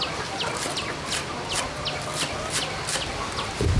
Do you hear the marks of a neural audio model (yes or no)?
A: no